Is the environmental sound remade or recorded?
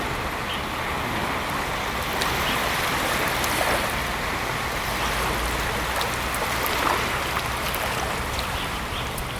recorded